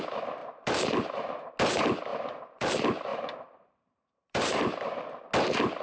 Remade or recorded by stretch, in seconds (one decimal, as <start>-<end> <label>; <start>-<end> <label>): 0.0-0.4 recorded; 0.4-1.5 remade; 1.5-2.1 recorded; 2.1-2.7 remade; 2.7-3.1 recorded; 3.1-5.2 remade; 5.2-5.8 recorded